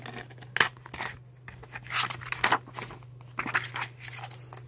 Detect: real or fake real